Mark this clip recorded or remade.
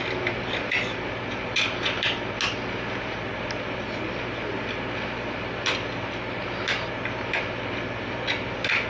recorded